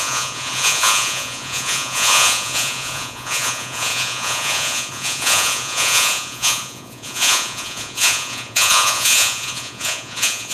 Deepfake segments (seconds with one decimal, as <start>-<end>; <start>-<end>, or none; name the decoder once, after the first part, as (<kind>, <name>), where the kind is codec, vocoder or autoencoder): 0.0-10.5 (vocoder, Vocos)